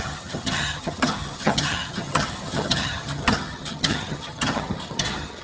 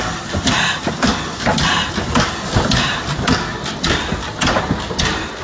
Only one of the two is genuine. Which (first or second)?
second